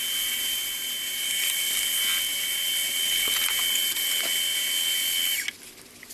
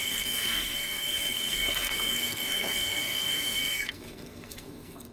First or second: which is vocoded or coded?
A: second